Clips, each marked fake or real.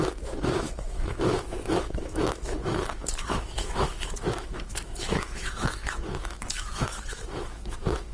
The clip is fake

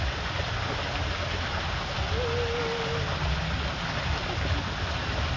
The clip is real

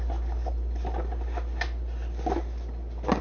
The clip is real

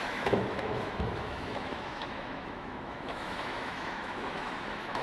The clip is fake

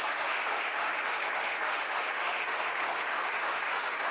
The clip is fake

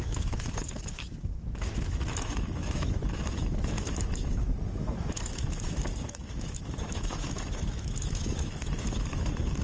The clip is fake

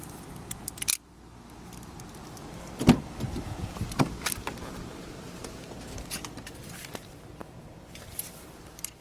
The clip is real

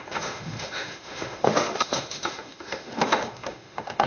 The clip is fake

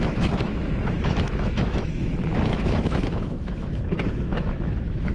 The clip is fake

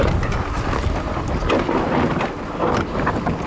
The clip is real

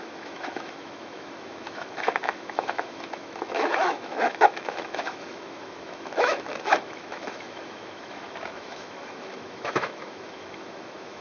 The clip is fake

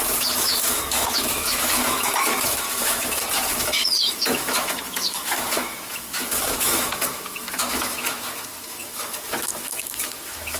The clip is fake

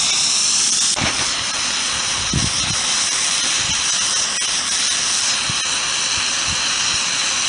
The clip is real